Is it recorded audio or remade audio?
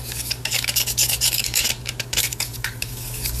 remade